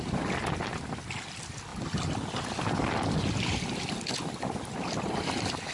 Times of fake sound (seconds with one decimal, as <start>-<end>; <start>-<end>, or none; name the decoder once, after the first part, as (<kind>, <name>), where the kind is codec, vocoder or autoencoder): none